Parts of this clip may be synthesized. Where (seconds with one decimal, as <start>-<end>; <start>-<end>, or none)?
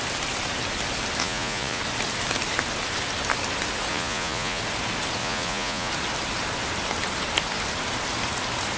1.2-1.8; 3.9-4.6; 5.2-5.9